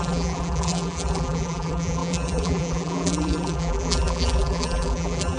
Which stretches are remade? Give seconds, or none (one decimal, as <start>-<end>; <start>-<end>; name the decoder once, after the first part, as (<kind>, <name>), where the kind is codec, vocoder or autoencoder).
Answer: 0.0-5.4 (vocoder, BigVGAN v2)